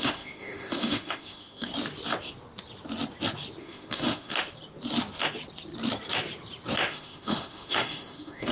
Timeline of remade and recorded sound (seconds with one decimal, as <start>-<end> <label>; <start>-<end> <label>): 0.0-1.7 remade; 1.7-3.6 recorded; 3.6-4.3 remade; 4.3-6.9 recorded; 6.9-8.5 remade

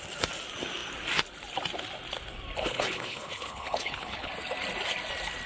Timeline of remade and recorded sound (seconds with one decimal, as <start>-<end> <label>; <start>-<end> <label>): 0.0-2.6 recorded; 2.6-4.3 remade; 4.3-5.5 recorded

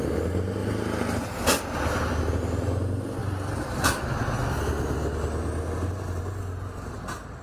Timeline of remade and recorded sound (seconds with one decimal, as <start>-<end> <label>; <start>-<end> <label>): 0.0-7.4 recorded